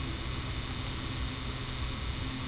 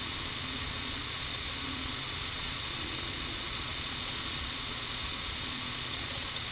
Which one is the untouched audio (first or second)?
first